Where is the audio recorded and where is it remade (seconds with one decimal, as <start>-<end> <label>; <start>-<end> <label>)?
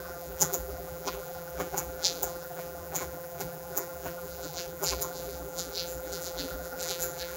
0.0-7.4 remade